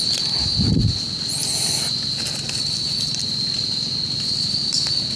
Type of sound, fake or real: real